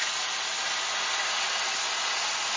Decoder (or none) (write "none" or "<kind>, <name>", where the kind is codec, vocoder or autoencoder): none